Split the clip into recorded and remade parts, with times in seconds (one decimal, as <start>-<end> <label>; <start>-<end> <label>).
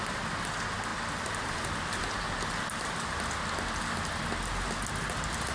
0.0-5.5 recorded